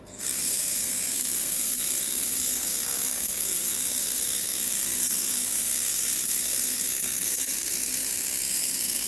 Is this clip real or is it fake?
fake